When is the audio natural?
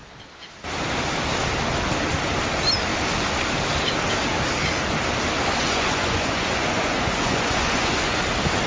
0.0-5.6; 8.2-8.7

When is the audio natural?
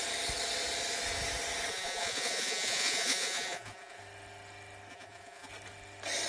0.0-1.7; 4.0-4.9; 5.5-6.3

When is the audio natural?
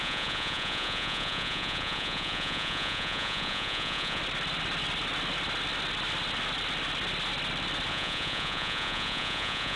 4.2-7.9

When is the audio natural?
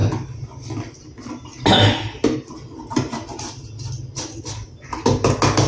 0.0-5.7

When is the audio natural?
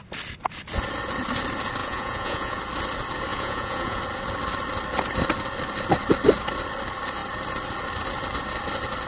0.0-1.8; 2.6-3.3; 4.0-9.1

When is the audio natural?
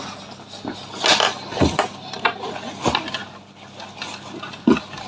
0.0-5.1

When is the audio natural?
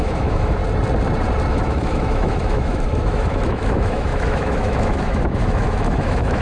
0.6-1.5